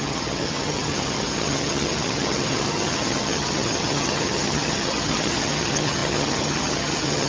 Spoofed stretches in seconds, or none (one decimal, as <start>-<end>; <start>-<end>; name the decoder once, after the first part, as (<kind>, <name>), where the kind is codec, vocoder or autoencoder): 0.0-7.3 (vocoder, HiFi-GAN)